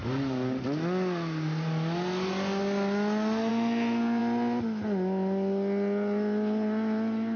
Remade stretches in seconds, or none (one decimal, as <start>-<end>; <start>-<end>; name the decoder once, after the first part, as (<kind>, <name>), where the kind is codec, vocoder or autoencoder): none